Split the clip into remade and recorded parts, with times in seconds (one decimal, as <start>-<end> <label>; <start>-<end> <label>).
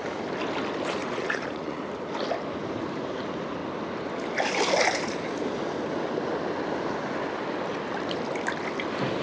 0.0-1.0 recorded; 1.0-1.8 remade; 1.8-9.2 recorded